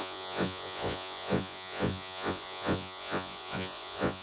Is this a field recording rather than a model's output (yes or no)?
no